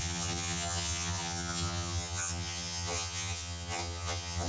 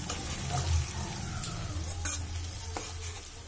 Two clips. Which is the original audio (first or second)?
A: second